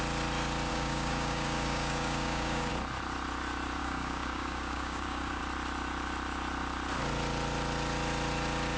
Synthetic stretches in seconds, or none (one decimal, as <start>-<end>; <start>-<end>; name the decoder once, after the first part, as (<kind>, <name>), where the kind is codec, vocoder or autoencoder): 0.7-2.7 (codec, DAC); 3.8-5.4